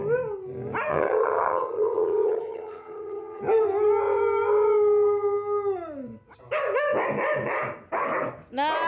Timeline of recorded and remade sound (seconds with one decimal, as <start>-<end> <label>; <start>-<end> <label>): 0.0-0.9 recorded; 0.9-3.4 remade; 3.4-8.9 recorded